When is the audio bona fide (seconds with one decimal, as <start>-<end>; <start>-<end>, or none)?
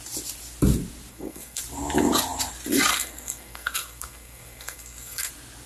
0.0-1.1; 1.6-2.9; 5.3-5.7